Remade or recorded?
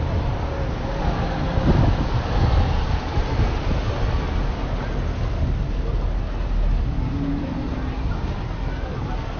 recorded